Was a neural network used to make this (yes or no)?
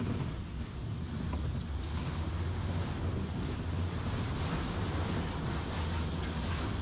no